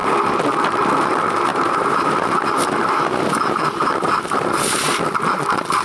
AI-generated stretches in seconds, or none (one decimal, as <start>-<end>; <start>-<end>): 1.5-5.0